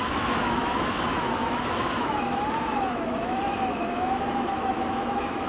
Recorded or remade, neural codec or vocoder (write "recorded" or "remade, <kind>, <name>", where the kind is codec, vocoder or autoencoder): remade, autoencoder, DAC-VAE